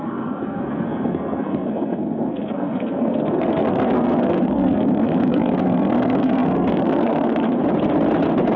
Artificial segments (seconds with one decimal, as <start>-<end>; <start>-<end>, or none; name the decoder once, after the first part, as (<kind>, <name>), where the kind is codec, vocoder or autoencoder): 0.0-7.6 (codec, SNAC)